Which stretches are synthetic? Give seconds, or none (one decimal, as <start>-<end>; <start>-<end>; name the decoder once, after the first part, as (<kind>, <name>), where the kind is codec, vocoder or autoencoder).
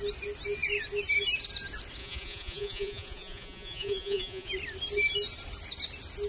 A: 2.0-4.5 (vocoder, Vocos)